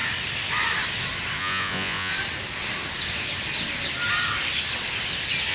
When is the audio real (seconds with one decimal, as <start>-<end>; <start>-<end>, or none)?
0.0-1.4; 2.1-5.5